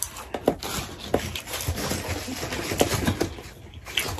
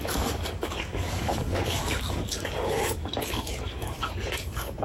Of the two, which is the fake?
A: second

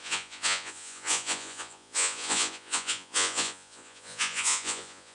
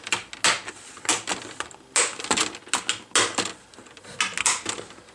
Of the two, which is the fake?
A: first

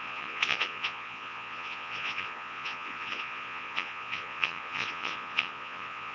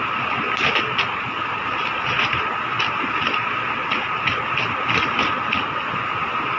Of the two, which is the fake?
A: first